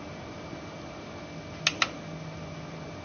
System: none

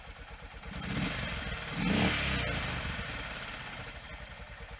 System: none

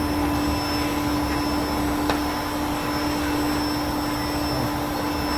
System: none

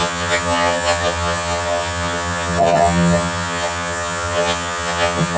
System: vocoder, HiFi-GAN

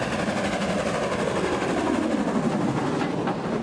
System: none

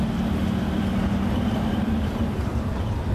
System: vocoder, BigVGAN v2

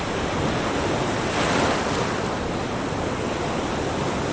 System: none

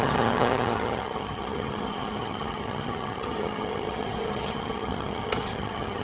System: vocoder, HiFi-GAN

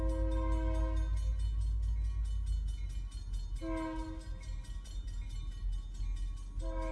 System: none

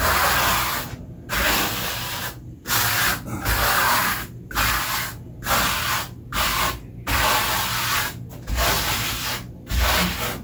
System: none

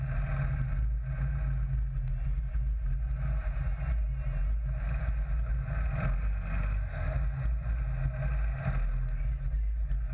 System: none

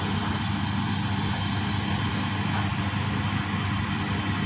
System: none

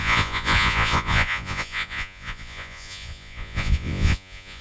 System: vocoder, Vocos